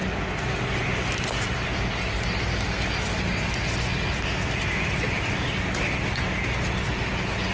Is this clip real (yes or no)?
yes